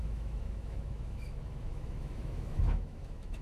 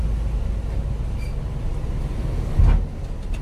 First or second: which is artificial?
first